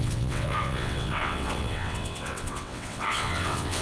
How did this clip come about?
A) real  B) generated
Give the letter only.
B